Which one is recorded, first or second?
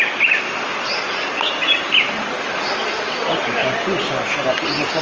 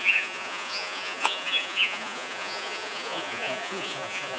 first